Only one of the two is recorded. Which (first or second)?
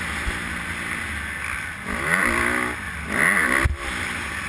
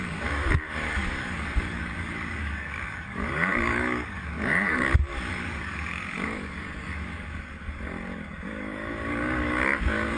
first